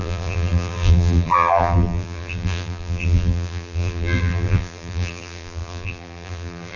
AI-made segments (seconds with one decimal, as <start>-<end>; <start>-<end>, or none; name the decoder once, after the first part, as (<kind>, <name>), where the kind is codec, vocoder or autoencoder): 0.0-6.8 (vocoder, BigVGAN v2)